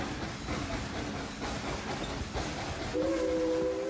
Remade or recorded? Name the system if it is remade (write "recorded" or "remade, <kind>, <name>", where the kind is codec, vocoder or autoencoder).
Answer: recorded